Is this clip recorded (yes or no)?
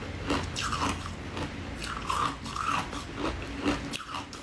yes